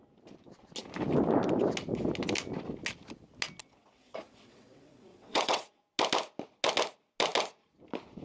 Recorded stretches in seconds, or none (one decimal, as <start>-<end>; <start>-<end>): 0.0-3.6; 5.8-8.2